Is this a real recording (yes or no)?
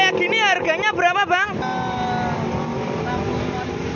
yes